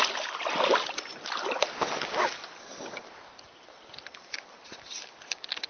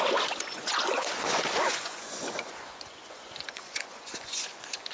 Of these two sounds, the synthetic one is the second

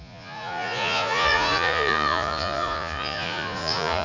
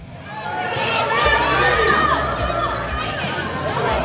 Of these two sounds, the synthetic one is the first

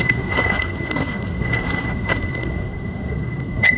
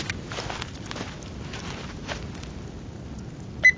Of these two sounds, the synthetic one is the first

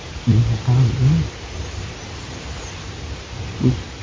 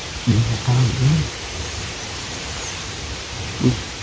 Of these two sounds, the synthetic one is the second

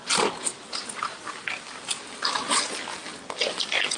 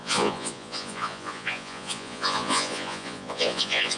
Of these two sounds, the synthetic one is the second